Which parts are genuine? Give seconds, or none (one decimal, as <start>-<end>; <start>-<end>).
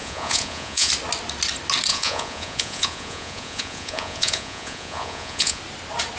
0.9-1.9; 5.6-6.2